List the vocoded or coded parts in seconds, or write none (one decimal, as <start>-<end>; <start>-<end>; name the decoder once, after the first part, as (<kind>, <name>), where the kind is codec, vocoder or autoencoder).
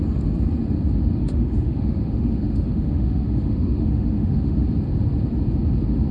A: 1.2-4.6 (autoencoder, DAC-VAE)